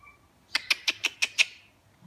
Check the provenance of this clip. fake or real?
real